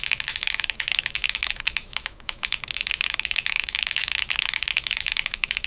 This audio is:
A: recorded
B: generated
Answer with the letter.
B